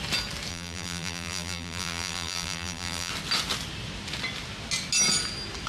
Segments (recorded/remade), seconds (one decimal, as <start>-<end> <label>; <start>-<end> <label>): 0.0-0.5 recorded; 0.5-3.1 remade; 3.1-5.7 recorded

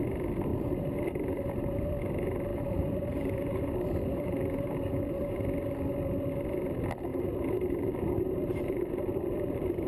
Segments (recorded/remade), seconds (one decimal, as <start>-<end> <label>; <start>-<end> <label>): 0.0-0.5 recorded; 0.5-1.9 remade; 1.9-2.5 recorded; 2.5-5.4 remade; 5.4-7.1 recorded; 7.1-9.9 remade

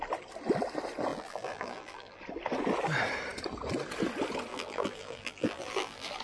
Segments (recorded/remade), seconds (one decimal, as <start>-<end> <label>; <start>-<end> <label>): 0.0-1.1 recorded; 1.1-2.2 remade; 2.2-4.5 recorded; 4.5-6.2 remade

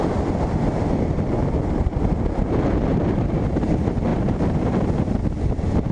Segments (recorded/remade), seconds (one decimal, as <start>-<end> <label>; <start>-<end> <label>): 0.0-1.4 recorded; 1.4-2.4 remade; 2.4-2.9 recorded; 2.9-3.6 remade; 3.6-4.1 recorded; 4.1-4.7 remade; 4.7-5.9 recorded

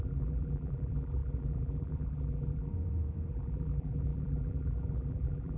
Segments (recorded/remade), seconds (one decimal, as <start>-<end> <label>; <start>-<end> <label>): 0.0-2.7 remade; 2.7-3.3 recorded; 3.3-5.6 remade

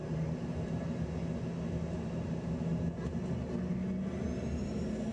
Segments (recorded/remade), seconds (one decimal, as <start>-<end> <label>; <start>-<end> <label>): 0.0-5.1 recorded